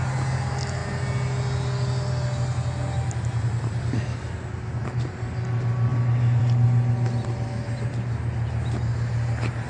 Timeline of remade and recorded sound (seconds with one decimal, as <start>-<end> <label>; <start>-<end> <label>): 0.0-9.7 recorded